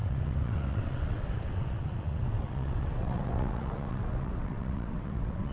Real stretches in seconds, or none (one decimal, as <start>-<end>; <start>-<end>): none